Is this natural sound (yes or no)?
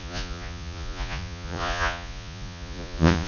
no